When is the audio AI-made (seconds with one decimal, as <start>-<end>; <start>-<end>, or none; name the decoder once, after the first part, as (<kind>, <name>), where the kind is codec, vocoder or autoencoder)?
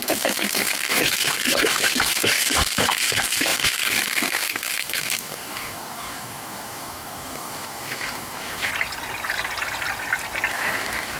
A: 0.0-8.7 (codec, DAC); 10.5-11.2